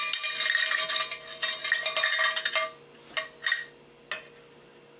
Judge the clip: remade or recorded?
recorded